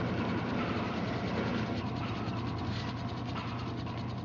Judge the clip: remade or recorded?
recorded